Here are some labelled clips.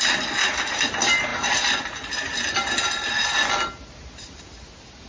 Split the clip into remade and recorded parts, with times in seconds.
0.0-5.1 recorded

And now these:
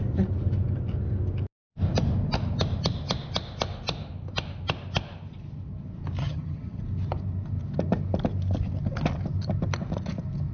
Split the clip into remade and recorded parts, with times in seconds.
0.0-6.2 recorded; 6.2-6.8 remade; 6.8-10.5 recorded

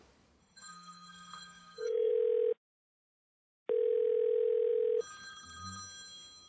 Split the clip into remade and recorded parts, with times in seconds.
0.0-0.4 recorded; 0.4-2.1 remade; 2.1-6.5 recorded

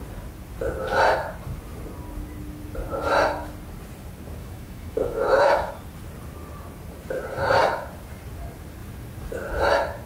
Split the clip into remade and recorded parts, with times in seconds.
0.0-4.4 recorded; 4.4-5.7 remade; 5.7-10.1 recorded

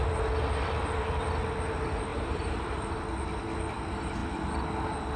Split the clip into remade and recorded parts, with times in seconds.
0.0-2.1 recorded; 2.1-2.9 remade; 2.9-5.2 recorded

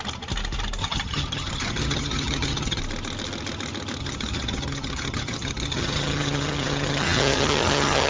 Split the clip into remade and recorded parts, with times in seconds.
0.0-0.8 recorded; 0.8-2.8 remade; 2.8-4.0 recorded; 4.0-8.1 remade

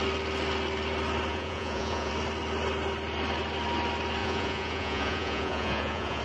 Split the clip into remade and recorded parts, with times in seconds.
0.0-1.3 recorded; 1.3-2.1 remade; 2.1-4.2 recorded; 4.2-6.2 remade